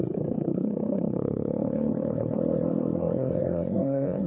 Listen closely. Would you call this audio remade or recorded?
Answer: remade